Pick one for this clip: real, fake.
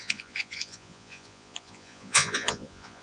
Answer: fake